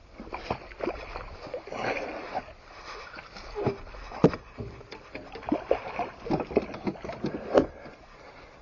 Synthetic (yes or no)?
no